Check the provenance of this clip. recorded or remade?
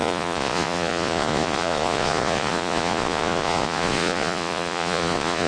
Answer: remade